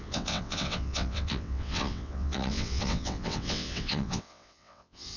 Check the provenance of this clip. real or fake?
fake